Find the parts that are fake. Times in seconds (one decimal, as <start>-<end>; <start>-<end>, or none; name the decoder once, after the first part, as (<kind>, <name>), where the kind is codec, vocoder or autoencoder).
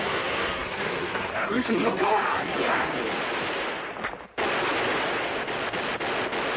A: 0.0-3.0 (codec, SNAC)